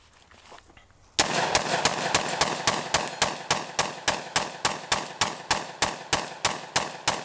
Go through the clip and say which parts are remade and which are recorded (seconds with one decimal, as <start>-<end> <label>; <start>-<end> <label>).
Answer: 0.0-7.2 recorded